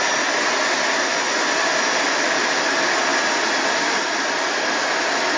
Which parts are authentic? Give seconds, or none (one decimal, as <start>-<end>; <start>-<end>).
0.0-1.1; 1.7-5.4